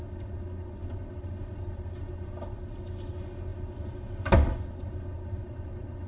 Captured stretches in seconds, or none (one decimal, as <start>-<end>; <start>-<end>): 0.0-6.1